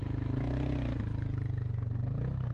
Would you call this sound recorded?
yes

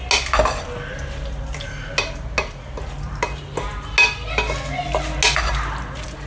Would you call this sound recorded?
yes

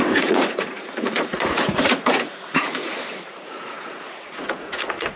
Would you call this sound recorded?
no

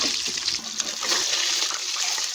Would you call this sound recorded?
yes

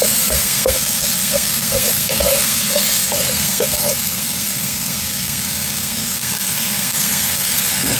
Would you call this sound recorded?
no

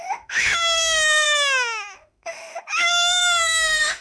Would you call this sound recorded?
no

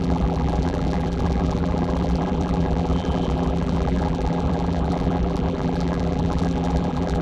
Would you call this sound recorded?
no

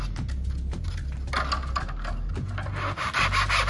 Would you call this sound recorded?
yes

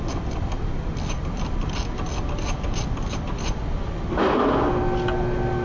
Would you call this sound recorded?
yes